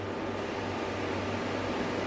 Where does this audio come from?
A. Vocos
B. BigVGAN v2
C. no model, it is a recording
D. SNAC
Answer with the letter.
C